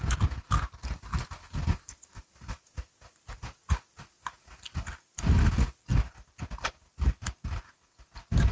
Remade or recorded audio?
recorded